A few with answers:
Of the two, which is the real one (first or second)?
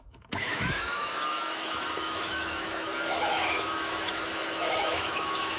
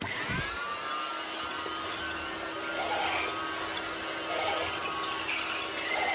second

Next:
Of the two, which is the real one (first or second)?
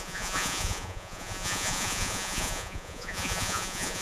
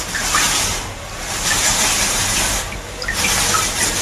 second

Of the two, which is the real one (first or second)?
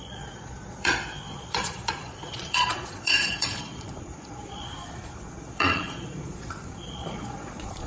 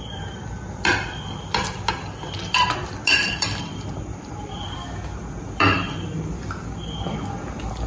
second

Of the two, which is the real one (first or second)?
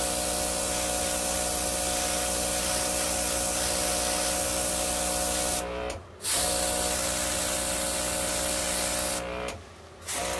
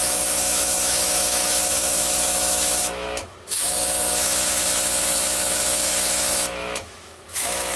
first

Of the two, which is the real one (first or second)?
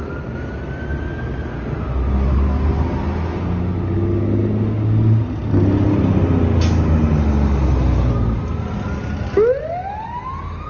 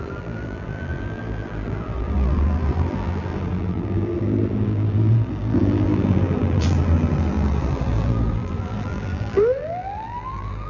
first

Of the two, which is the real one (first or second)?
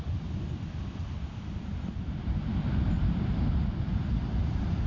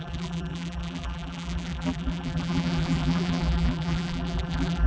first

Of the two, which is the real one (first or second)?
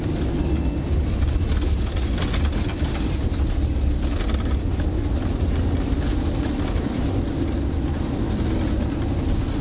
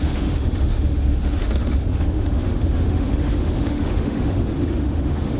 first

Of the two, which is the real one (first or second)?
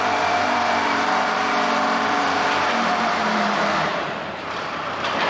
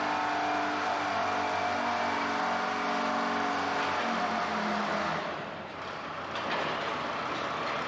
second